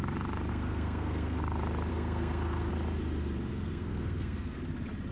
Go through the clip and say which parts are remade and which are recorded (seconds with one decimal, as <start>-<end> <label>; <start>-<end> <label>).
0.0-0.5 recorded; 0.5-1.4 remade; 1.4-1.9 recorded; 1.9-2.7 remade; 2.7-3.5 recorded; 3.5-4.6 remade; 4.6-5.1 recorded